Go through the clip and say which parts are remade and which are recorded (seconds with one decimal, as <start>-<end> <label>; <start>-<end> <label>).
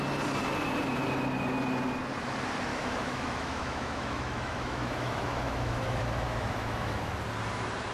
0.0-2.7 recorded; 2.7-7.1 remade; 7.1-7.9 recorded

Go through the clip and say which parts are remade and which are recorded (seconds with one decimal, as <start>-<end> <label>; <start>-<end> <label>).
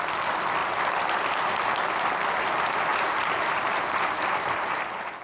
0.0-2.9 recorded; 2.9-4.8 remade; 4.8-5.2 recorded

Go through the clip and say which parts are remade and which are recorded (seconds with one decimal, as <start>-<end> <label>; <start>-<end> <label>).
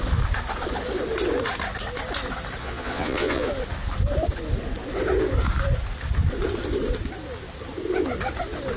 0.0-2.6 recorded; 2.6-3.5 remade; 3.5-8.8 recorded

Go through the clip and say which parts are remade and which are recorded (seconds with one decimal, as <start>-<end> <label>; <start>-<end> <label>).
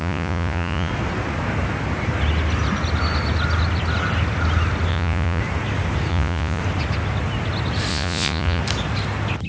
0.0-0.9 remade; 0.9-4.9 recorded; 4.9-5.4 remade; 5.4-6.1 recorded; 6.1-6.6 remade; 6.6-7.9 recorded; 7.9-8.6 remade; 8.6-9.5 recorded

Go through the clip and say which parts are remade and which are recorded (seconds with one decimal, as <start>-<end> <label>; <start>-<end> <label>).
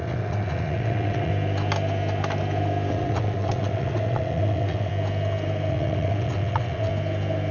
0.0-1.3 remade; 1.3-2.9 recorded; 2.9-4.9 remade; 4.9-5.7 recorded; 5.7-6.9 remade; 6.9-7.5 recorded